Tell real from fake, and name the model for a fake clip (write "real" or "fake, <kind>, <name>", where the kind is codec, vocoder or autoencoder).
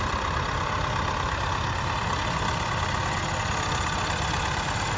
real